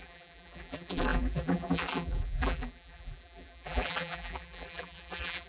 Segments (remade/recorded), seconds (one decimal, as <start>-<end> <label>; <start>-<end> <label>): 0.0-5.5 remade